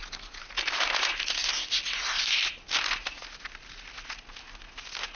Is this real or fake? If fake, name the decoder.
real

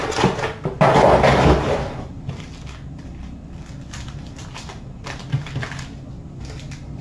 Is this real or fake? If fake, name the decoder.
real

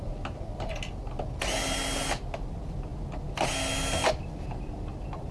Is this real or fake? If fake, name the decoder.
real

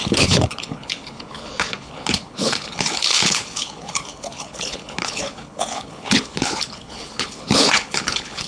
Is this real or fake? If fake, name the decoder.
fake, codec, HILCodec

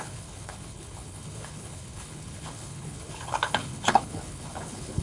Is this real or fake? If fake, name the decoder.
fake, codec, HILCodec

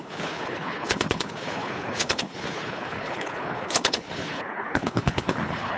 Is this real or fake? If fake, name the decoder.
fake, codec, HILCodec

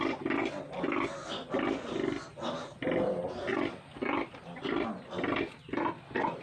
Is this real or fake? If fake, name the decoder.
real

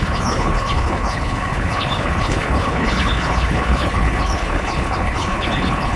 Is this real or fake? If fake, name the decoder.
fake, codec, HILCodec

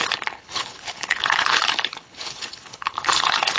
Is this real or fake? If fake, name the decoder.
fake, codec, HILCodec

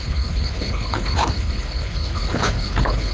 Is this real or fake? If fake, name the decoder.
fake, codec, HILCodec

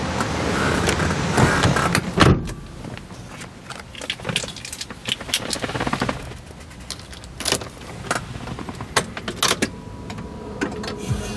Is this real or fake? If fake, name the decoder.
real